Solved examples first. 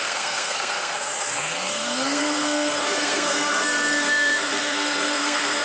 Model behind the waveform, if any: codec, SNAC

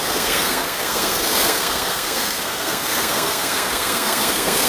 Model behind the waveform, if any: codec, SNAC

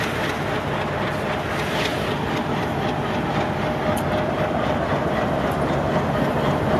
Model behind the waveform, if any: none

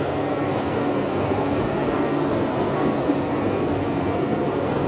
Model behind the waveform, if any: codec, SNAC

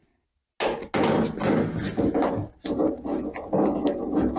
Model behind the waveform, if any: none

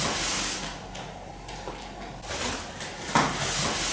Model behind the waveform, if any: none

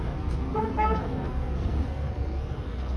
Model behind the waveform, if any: codec, SNAC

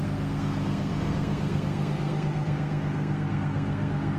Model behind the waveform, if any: codec, SNAC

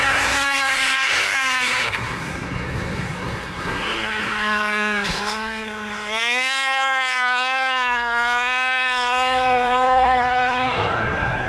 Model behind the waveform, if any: codec, SNAC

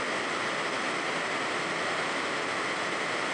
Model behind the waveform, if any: none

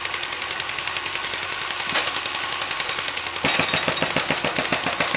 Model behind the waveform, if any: none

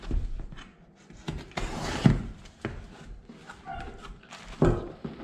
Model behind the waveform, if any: none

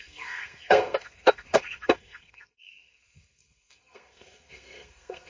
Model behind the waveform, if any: codec, SNAC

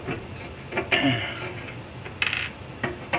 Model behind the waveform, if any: none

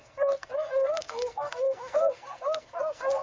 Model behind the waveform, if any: codec, SNAC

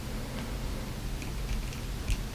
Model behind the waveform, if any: none